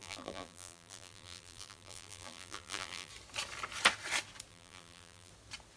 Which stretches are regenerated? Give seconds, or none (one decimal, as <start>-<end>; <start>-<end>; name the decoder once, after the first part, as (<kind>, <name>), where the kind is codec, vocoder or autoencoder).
0.0-3.1 (vocoder, BigVGAN v2); 4.5-5.3